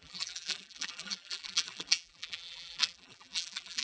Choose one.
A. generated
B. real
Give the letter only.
A